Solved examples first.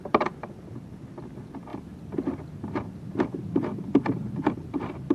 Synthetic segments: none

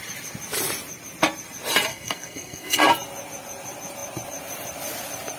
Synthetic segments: 1.9-2.8 (codec, SNAC)

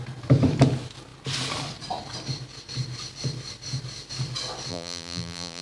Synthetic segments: 4.7-5.6 (vocoder, BigVGAN v2)

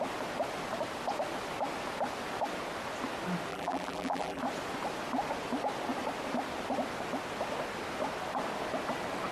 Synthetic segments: 3.5-4.4 (vocoder, BigVGAN v2)

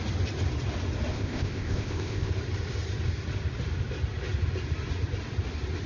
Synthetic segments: 1.1-2.3 (codec, ZipCodec)